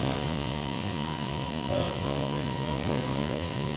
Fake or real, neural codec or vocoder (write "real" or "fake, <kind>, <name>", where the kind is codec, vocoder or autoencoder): fake, vocoder, WaveNeXt